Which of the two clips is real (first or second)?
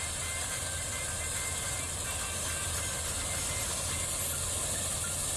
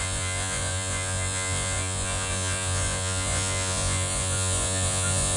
first